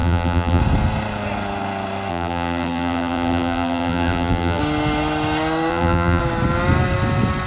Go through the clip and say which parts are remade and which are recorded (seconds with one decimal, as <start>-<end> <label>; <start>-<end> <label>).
0.0-0.6 remade; 0.6-2.1 recorded; 2.1-4.6 remade; 4.6-5.7 recorded; 5.7-6.2 remade; 6.2-7.5 recorded